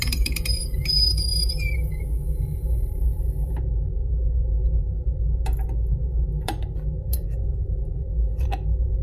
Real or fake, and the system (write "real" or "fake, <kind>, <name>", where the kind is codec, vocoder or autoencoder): fake, vocoder, BigVGAN v2